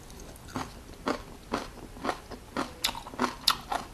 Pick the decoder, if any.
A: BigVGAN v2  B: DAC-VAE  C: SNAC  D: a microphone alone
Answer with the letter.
D